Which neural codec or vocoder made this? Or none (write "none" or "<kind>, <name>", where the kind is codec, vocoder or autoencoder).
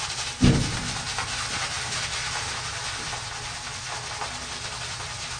none